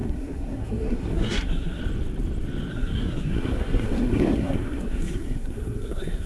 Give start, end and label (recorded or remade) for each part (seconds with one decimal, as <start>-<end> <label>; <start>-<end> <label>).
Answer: 0.0-1.8 remade; 1.8-2.7 recorded; 2.7-6.3 remade